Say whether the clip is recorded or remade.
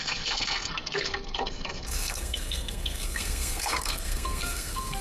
remade